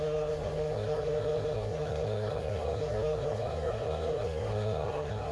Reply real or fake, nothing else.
fake